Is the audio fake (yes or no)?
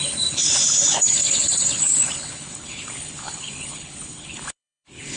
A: yes